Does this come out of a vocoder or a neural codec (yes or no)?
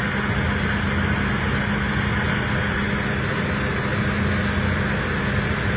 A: no